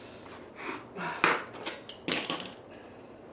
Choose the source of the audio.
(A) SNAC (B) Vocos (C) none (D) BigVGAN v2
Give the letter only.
C